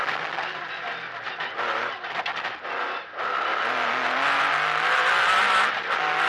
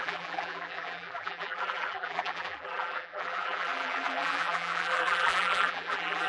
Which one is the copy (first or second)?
second